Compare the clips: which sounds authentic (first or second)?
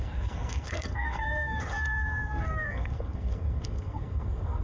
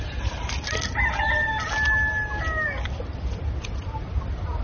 second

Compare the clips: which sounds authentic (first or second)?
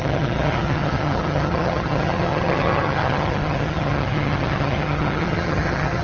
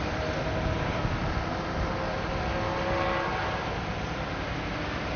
second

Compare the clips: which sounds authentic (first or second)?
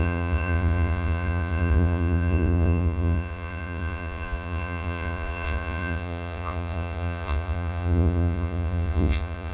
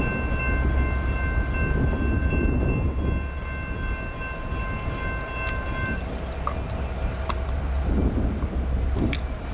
second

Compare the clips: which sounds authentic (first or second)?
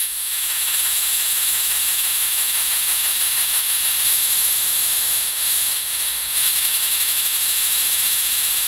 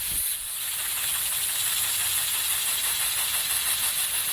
second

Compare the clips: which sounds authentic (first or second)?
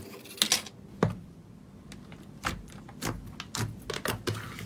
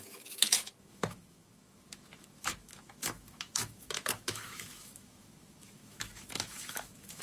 first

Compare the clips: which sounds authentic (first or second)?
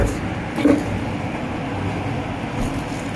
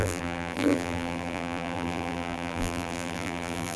first